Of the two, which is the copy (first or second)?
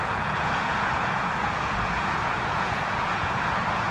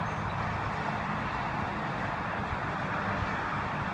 first